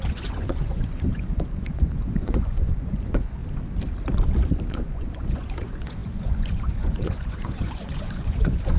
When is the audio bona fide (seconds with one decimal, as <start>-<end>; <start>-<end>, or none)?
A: 3.4-4.7